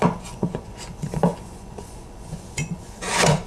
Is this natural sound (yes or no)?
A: no